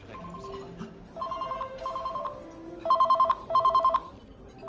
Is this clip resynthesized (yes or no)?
no